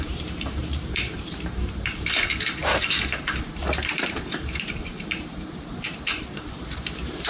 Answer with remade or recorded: remade